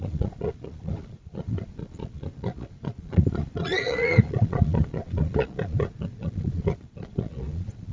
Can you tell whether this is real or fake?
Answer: fake